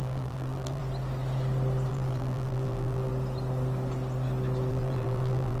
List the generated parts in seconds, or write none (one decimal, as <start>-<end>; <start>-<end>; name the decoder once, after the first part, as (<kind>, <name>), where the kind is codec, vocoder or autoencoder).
0.0-0.8 (vocoder, BigVGAN v2); 1.9-3.1; 4.7-5.6